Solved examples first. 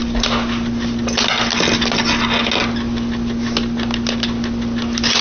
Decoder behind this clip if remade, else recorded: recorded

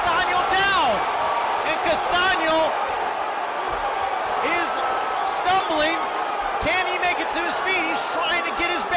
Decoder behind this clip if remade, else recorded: recorded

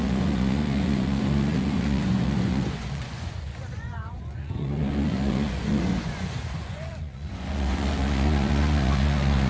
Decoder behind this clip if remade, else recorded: remade, vocoder, Vocos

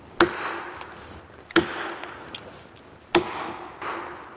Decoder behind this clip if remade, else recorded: recorded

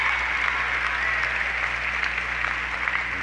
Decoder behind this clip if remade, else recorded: recorded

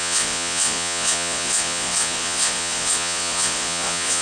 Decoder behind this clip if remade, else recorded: remade, vocoder, Vocos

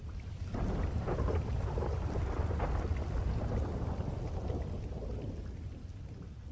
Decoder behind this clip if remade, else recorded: recorded